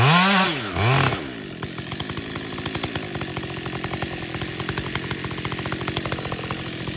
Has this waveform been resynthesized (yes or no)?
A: no